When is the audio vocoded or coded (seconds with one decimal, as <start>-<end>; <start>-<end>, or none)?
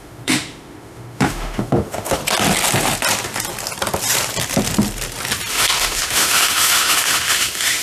0.0-2.2; 5.5-7.8